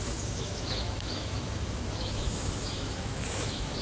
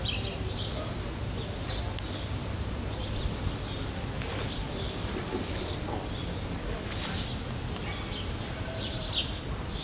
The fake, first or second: first